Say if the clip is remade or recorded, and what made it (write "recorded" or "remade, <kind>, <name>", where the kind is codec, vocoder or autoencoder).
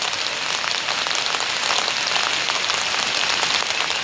recorded